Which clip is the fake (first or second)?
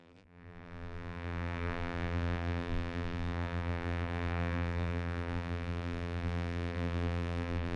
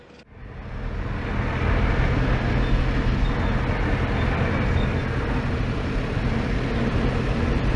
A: first